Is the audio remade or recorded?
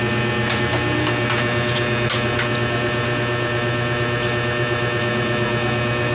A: recorded